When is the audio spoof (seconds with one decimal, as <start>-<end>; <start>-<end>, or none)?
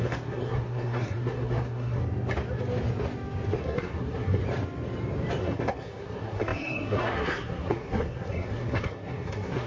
0.0-2.0; 3.6-4.4; 5.4-9.7